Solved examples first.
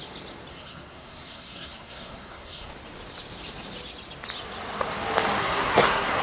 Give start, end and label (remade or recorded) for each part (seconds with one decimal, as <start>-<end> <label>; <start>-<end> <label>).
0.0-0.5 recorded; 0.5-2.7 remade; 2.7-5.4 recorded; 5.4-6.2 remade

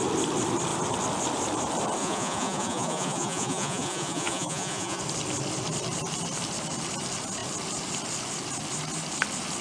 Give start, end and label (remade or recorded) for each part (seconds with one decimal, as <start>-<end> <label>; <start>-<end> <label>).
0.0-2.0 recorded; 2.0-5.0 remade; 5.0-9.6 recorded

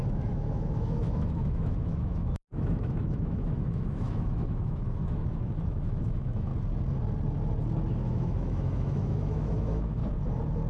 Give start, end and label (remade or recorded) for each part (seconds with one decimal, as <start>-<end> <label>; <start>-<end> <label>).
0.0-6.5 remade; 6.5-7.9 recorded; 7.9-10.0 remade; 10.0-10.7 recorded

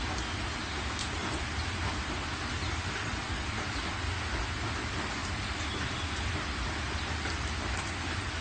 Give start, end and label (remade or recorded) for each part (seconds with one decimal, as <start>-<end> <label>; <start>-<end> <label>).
0.0-8.4 recorded

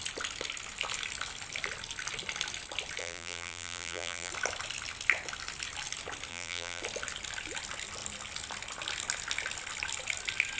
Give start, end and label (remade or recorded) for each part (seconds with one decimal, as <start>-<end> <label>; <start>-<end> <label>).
0.0-3.0 recorded; 3.0-4.3 remade; 4.3-6.3 recorded; 6.3-6.8 remade; 6.8-10.6 recorded